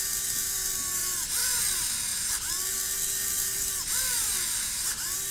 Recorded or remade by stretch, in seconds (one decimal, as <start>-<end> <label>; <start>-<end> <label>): 0.0-5.3 recorded